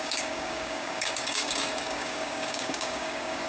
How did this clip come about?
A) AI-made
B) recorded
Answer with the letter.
A